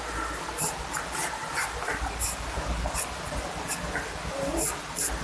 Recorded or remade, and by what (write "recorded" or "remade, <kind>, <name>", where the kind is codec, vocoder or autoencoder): recorded